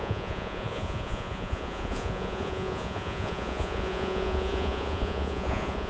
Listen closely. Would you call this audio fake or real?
fake